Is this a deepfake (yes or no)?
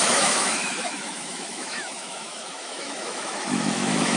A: yes